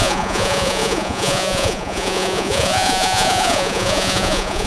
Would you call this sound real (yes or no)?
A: no